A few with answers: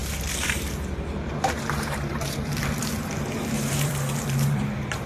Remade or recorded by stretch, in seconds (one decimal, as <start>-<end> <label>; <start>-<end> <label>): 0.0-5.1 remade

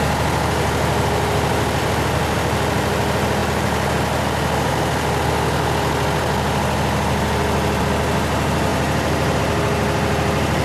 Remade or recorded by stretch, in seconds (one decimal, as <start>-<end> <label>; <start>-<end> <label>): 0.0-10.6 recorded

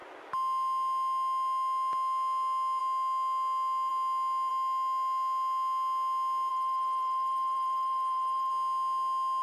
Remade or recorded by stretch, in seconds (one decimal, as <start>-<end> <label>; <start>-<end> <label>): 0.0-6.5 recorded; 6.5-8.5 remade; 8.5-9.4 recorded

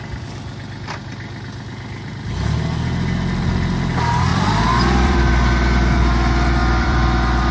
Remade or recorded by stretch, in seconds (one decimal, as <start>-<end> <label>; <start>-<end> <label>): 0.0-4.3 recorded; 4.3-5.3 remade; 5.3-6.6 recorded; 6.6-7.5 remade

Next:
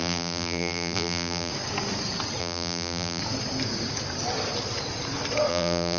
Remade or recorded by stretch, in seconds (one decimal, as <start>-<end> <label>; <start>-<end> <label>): 0.0-1.5 remade; 1.5-2.4 recorded; 2.4-3.2 remade; 3.2-5.5 recorded; 5.5-6.0 remade

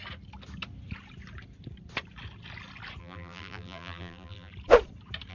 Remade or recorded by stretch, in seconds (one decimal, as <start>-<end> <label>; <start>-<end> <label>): 0.0-3.0 recorded; 3.0-4.5 remade; 4.5-5.3 recorded

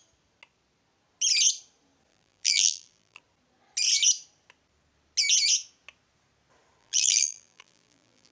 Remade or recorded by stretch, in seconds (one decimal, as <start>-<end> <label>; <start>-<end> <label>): 0.0-2.1 recorded; 2.1-3.2 remade; 3.2-6.8 recorded; 6.8-8.3 remade

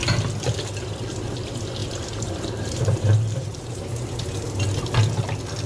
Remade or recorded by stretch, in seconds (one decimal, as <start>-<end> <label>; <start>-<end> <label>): 0.0-1.8 recorded; 1.8-4.6 remade; 4.6-5.7 recorded